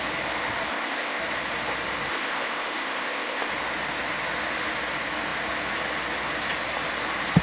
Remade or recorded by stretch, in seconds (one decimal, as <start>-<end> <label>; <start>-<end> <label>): 0.0-0.7 recorded; 0.7-1.2 remade; 1.2-2.1 recorded; 2.1-3.5 remade; 3.5-7.4 recorded